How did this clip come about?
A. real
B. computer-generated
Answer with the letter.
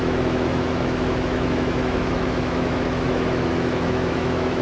B